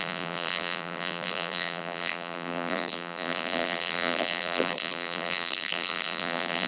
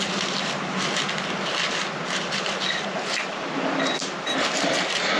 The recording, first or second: second